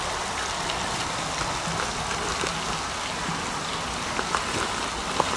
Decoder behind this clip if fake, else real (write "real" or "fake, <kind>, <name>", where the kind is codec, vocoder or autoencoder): real